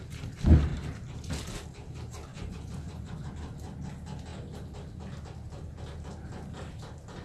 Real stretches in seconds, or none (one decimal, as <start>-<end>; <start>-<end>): 0.0-2.3; 3.3-7.2